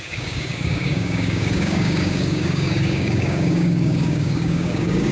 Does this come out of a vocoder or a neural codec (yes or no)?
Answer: yes